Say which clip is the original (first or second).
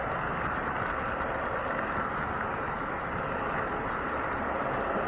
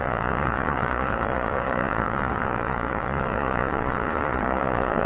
first